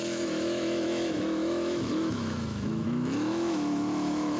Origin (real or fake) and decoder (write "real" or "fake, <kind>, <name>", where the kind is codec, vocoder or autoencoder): fake, autoencoder, DAC-VAE